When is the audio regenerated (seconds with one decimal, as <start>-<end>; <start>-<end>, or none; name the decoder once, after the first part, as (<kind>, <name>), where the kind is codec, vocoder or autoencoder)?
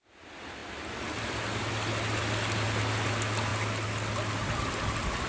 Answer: none